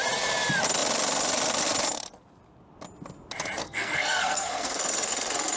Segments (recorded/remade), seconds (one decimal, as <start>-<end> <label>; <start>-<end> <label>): 0.0-3.6 recorded; 3.6-5.6 remade